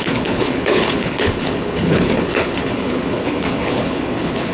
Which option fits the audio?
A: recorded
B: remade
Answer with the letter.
B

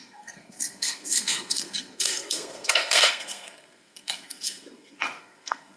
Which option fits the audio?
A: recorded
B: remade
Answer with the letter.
B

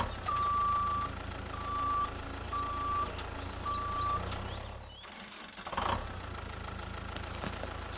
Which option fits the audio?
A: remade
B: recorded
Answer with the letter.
B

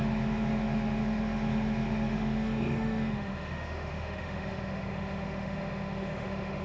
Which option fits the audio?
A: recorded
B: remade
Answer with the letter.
B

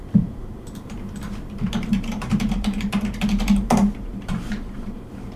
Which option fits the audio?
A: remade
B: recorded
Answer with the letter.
A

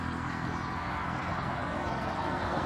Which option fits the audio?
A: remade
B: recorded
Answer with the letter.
A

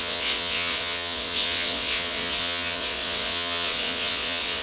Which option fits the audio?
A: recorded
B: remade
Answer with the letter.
B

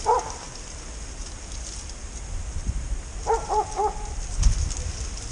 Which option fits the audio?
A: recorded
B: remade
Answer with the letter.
A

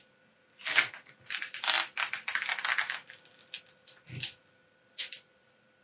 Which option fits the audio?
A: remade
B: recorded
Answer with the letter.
B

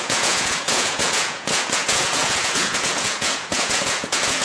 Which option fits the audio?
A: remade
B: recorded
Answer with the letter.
A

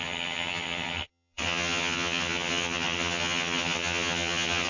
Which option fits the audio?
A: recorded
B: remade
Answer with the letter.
B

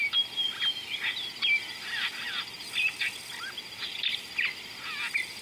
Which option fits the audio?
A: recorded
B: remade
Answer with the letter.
A